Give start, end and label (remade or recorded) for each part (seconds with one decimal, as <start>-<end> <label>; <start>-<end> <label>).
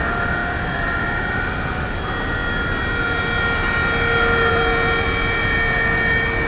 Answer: 0.0-6.5 recorded